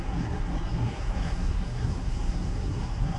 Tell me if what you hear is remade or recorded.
remade